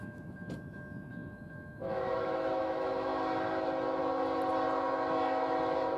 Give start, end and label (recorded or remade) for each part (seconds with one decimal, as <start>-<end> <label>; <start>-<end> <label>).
0.0-3.1 remade; 3.1-6.0 recorded

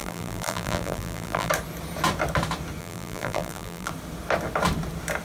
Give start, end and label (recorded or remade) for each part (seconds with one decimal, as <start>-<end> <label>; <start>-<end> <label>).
0.0-1.5 remade; 1.5-2.8 recorded; 2.8-3.9 remade; 3.9-5.2 recorded

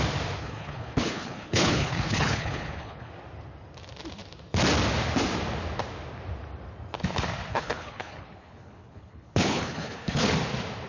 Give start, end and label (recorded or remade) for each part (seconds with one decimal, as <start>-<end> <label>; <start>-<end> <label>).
0.0-0.4 recorded; 0.4-3.1 remade; 3.1-7.5 recorded; 7.5-10.3 remade; 10.3-10.9 recorded

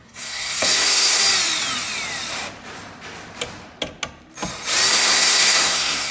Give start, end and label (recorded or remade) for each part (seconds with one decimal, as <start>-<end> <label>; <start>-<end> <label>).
0.0-1.2 remade; 1.2-4.9 recorded; 4.9-6.1 remade

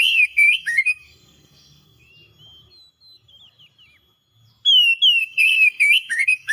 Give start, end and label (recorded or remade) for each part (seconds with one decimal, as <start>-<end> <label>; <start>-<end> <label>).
0.0-2.1 remade; 2.1-5.2 recorded; 5.2-6.5 remade